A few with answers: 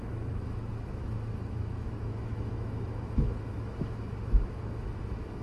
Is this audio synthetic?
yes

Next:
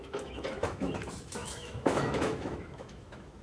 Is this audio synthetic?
yes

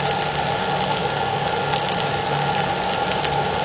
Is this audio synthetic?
no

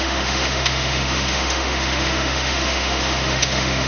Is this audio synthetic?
yes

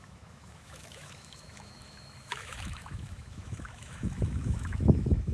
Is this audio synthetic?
yes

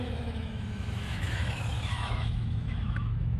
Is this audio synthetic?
yes